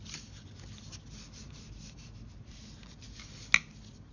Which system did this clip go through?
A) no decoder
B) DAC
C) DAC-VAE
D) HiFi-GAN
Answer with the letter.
A